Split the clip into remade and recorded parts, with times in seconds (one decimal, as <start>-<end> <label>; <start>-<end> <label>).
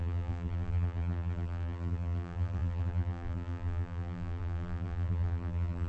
0.0-5.9 remade